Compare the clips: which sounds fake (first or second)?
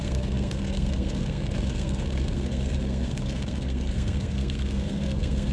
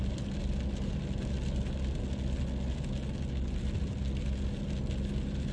first